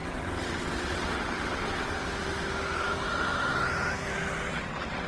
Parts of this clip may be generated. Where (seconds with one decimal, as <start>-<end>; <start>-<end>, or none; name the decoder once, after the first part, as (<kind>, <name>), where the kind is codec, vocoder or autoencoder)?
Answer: 0.0-2.0 (vocoder, WaveNeXt); 4.5-5.1